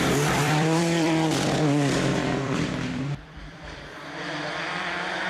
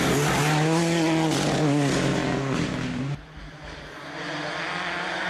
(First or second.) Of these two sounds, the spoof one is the first